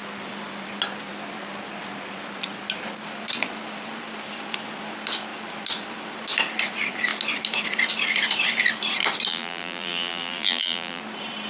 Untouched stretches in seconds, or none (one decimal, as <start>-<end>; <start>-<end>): 0.0-9.3; 11.0-11.5